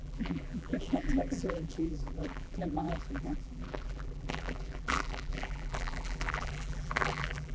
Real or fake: fake